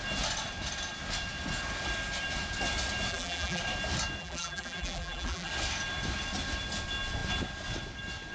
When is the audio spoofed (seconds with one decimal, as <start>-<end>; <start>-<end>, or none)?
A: 3.1-3.6; 4.2-5.5